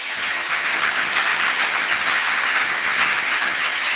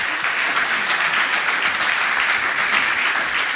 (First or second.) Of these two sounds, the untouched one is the second